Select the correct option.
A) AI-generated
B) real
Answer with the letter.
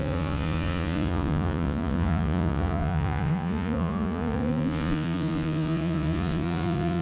A